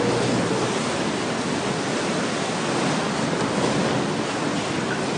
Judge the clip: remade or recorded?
recorded